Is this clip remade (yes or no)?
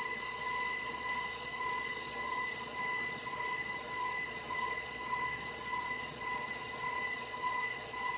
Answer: yes